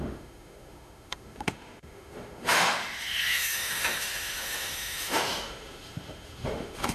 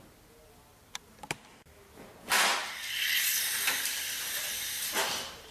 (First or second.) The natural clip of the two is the second